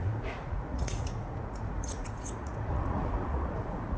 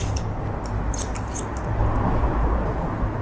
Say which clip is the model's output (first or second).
first